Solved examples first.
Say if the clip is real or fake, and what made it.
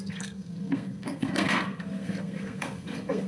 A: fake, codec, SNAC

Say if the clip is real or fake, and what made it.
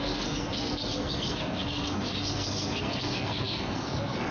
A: fake, codec, SNAC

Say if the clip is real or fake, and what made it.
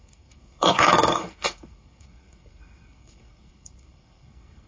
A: fake, codec, SNAC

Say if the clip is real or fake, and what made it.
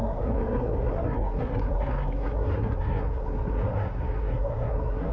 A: fake, codec, SNAC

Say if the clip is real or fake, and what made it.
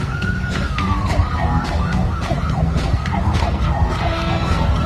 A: fake, codec, SNAC